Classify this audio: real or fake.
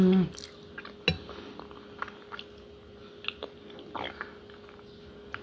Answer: real